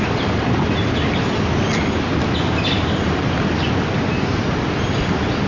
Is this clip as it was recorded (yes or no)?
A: yes